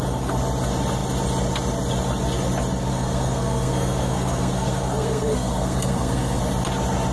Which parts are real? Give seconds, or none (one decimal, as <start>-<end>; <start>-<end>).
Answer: 0.0-2.9; 6.4-7.1